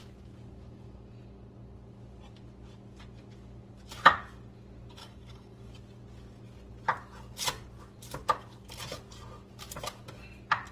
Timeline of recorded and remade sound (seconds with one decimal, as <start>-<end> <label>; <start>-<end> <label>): 0.0-5.0 recorded; 5.0-5.7 remade; 5.7-10.7 recorded